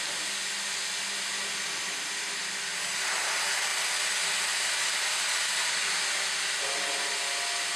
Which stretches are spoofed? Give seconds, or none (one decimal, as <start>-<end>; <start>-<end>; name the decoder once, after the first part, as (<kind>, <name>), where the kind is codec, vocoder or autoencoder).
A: none